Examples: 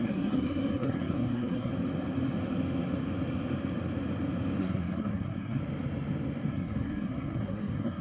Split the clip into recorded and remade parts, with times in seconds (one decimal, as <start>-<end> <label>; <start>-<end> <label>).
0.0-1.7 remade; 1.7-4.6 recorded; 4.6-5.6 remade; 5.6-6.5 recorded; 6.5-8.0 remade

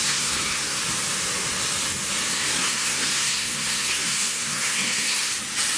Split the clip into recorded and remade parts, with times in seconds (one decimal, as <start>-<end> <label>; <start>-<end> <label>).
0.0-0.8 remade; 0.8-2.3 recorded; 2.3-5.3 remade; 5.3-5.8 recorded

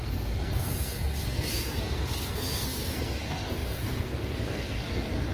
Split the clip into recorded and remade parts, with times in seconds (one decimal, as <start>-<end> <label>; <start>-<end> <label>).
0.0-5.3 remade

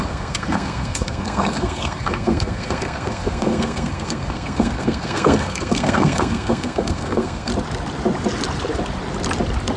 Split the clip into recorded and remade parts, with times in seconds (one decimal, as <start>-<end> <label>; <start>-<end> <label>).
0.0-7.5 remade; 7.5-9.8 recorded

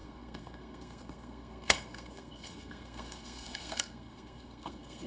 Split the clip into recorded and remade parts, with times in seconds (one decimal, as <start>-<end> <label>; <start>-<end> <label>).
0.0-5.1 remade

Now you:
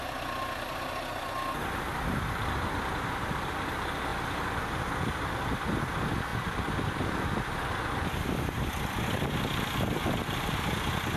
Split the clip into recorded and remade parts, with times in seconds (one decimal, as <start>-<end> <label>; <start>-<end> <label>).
0.0-11.2 recorded

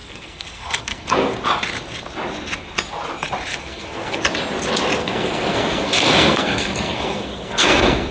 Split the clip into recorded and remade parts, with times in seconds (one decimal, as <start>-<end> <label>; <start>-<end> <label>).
0.0-1.3 remade; 1.3-3.5 recorded; 3.5-4.2 remade; 4.2-5.0 recorded; 5.0-8.1 remade